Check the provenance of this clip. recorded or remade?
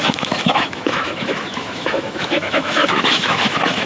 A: remade